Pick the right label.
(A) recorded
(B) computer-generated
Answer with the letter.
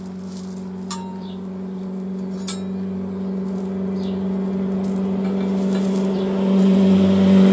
A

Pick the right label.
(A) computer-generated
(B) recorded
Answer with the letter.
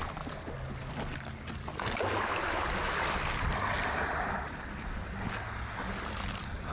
B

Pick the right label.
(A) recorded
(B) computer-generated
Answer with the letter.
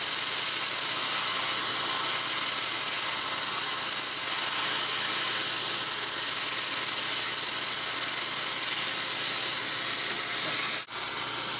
A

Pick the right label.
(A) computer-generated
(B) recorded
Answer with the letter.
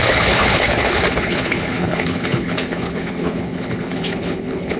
A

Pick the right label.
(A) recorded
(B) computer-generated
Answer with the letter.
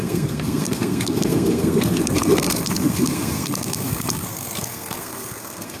B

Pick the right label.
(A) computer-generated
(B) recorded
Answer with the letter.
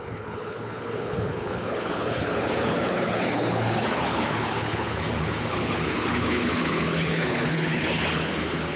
A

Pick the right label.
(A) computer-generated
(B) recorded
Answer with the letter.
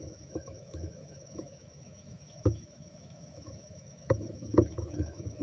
A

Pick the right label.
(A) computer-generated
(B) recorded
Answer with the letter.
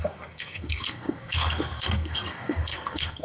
A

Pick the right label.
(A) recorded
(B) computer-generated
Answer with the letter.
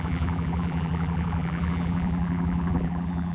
B